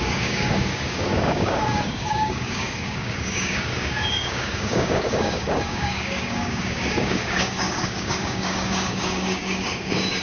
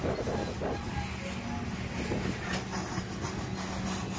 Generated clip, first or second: first